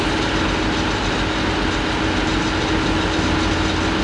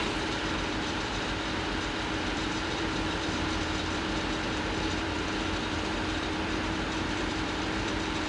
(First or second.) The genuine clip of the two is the first